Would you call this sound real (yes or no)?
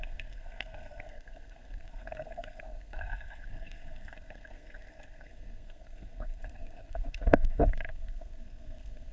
no